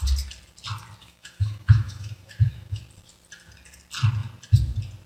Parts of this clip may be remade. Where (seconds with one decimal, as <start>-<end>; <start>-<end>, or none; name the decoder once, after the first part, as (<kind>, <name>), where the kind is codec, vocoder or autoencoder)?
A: 1.0-2.8 (autoencoder, DAC-VAE)